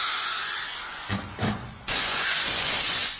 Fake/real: fake